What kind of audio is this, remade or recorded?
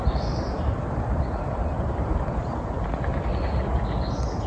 recorded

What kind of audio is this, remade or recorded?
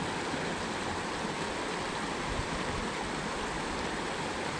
recorded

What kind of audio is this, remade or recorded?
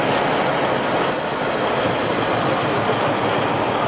recorded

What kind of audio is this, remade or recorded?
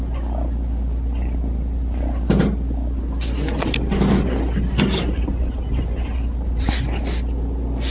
recorded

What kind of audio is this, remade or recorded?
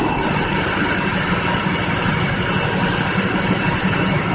recorded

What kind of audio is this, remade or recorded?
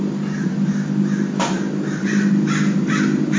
recorded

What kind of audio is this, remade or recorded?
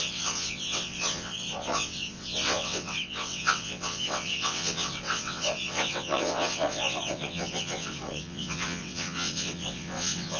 remade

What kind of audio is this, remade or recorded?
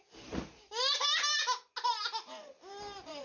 recorded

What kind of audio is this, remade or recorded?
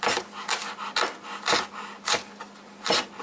recorded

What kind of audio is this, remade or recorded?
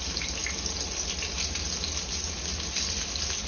recorded